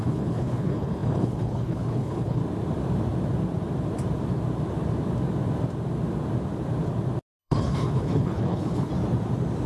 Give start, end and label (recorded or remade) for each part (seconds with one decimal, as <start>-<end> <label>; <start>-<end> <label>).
0.0-2.4 remade; 2.4-7.4 recorded; 7.4-8.9 remade; 8.9-9.7 recorded